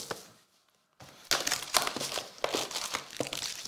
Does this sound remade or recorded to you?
recorded